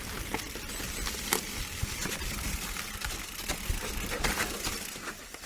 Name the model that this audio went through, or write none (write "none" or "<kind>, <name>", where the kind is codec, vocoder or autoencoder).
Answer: vocoder, BigVGAN v2